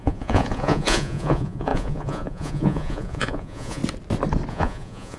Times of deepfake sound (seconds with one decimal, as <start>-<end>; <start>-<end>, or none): 0.0-3.8; 4.5-5.2

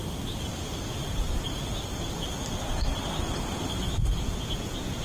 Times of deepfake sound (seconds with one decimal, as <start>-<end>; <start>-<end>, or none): 4.1-5.0

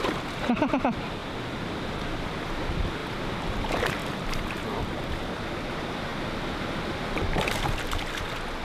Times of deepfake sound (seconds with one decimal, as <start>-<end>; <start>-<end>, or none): 4.0-5.0

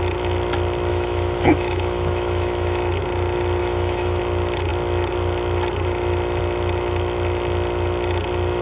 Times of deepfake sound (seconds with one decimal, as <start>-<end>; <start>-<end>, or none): 0.9-2.8; 3.6-4.2